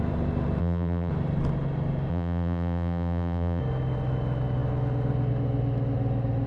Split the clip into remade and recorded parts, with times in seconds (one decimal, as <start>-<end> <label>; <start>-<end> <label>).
0.0-0.6 recorded; 0.6-1.1 remade; 1.1-2.1 recorded; 2.1-3.6 remade; 3.6-6.5 recorded